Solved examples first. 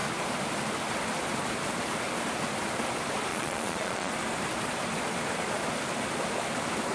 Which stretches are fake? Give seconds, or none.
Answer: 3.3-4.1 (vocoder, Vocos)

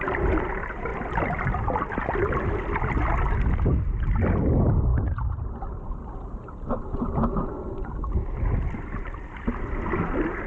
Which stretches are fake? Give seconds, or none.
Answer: none